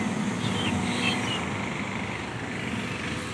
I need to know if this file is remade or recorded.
recorded